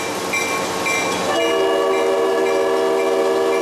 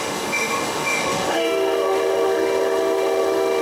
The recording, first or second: first